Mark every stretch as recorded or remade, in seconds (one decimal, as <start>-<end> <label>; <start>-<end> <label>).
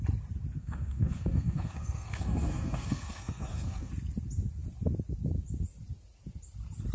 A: 0.0-0.6 recorded; 0.6-3.9 remade; 3.9-6.9 recorded